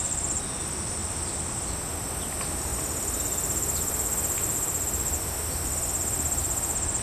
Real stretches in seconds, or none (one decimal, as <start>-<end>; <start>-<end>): 0.0-1.0; 2.1-2.7